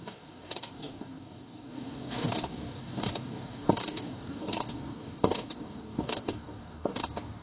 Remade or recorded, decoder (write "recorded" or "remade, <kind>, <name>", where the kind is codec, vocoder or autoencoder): remade, codec, DAC